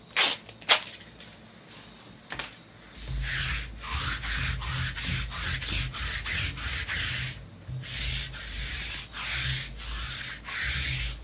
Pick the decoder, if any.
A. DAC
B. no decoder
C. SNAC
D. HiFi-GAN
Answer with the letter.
B